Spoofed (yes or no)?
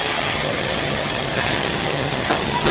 yes